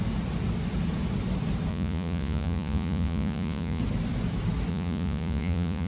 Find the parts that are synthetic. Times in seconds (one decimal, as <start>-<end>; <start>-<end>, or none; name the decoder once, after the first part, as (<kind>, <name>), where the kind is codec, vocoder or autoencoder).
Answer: 1.7-3.8 (vocoder, Vocos); 4.7-5.9